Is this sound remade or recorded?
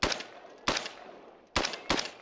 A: recorded